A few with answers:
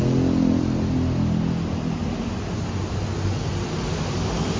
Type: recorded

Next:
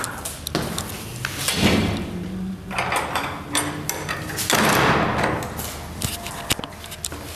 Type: recorded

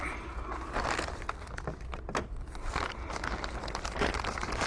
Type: recorded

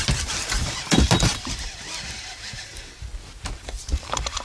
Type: recorded